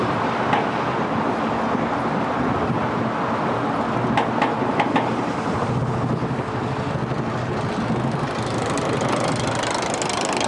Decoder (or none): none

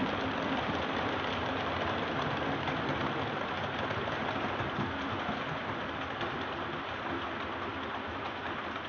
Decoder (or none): none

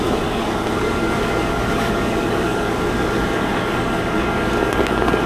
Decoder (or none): codec, DAC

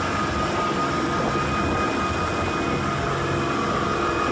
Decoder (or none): none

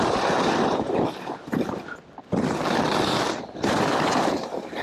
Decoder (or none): none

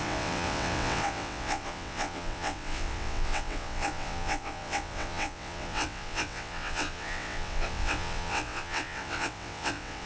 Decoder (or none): vocoder, WaveNeXt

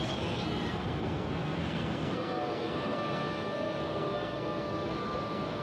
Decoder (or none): codec, SNAC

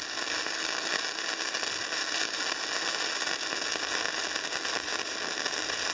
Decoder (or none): none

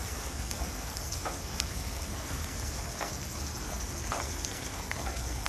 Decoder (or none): codec, SNAC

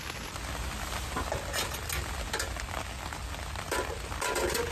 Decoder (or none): none